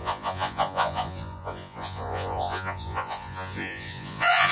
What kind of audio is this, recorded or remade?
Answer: remade